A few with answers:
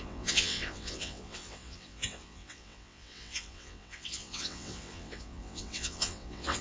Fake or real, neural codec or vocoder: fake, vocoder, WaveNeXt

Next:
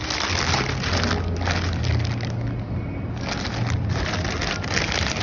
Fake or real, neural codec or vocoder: real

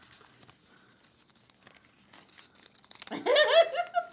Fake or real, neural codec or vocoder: real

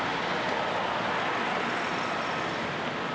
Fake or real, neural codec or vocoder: real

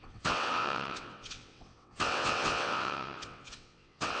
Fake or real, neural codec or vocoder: fake, vocoder, WaveNeXt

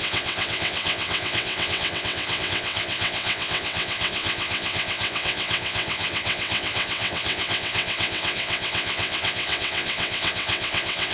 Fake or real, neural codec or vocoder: fake, vocoder, WaveNeXt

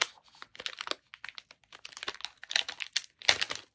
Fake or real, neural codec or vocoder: real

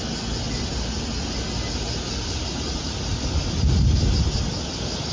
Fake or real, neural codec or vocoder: real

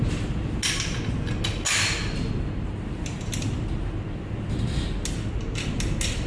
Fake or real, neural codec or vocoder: real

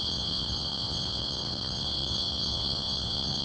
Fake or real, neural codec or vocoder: fake, vocoder, WaveNeXt